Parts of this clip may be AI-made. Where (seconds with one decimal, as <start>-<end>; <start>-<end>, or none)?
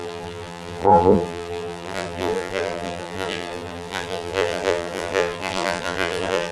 0.0-6.5